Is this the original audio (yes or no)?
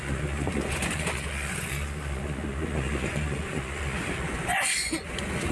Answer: no